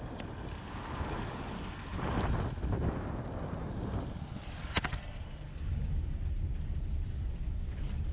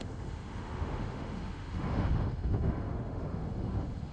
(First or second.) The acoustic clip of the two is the first